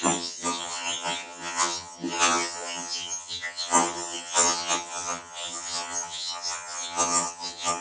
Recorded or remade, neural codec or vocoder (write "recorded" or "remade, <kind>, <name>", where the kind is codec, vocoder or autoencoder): remade, vocoder, HiFi-GAN